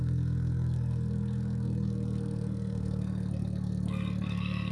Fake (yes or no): yes